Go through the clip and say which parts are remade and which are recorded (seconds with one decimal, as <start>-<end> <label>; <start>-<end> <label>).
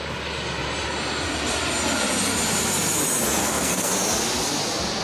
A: 0.0-3.4 recorded; 3.4-3.9 remade; 3.9-5.0 recorded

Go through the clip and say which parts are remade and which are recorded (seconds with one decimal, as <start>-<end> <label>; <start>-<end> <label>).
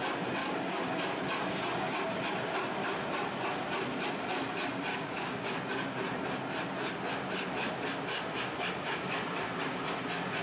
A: 0.0-0.4 recorded; 0.4-0.9 remade; 0.9-4.9 recorded; 4.9-5.6 remade; 5.6-10.4 recorded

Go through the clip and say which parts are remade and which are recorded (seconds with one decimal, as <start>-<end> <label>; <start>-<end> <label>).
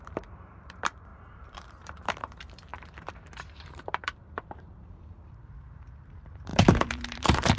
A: 0.0-7.6 remade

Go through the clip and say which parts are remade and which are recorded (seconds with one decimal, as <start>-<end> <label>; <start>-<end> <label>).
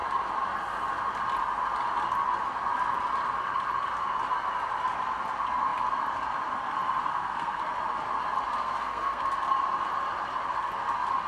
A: 0.0-7.1 recorded; 7.1-7.6 remade; 7.6-8.6 recorded; 8.6-9.2 remade; 9.2-11.3 recorded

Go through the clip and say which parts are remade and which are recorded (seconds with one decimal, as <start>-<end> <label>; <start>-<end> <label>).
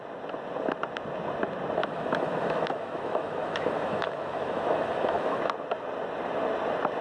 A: 0.0-1.8 recorded; 1.8-5.4 remade; 5.4-7.0 recorded